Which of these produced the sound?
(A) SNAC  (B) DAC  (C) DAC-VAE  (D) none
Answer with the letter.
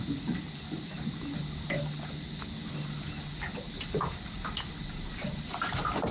D